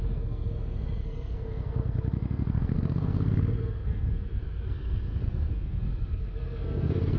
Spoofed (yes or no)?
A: yes